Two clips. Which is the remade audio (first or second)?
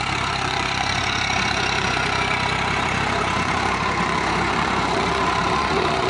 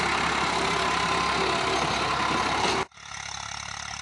first